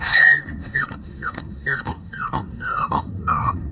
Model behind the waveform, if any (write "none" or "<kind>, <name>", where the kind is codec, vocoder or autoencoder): codec, SNAC